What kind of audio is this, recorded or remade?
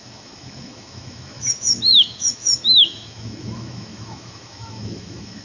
remade